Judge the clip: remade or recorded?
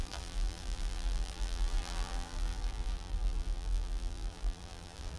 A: remade